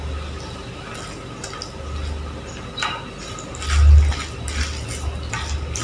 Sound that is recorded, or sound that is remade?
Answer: recorded